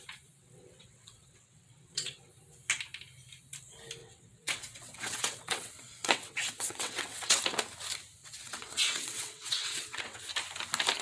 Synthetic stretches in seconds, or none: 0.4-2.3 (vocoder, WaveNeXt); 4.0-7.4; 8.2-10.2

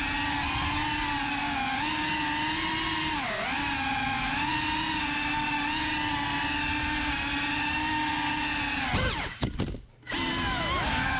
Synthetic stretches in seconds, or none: none

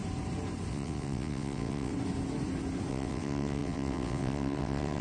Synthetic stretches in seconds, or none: 0.7-1.9 (vocoder, WaveNeXt); 2.9-5.0

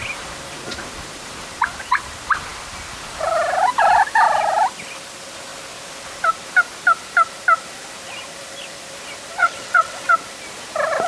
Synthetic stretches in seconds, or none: 9.4-10.1 (vocoder, WaveNeXt)

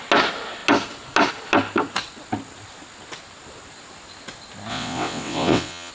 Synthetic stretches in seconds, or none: 4.7-5.9 (vocoder, WaveNeXt)

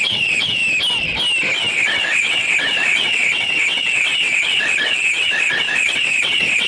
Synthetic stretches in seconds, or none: 0.0-0.6 (vocoder, WaveNeXt); 1.7-6.7

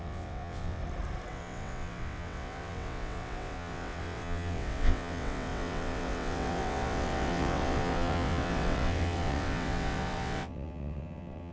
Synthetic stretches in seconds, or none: 0.0-0.8 (vocoder, WaveNeXt); 1.3-11.5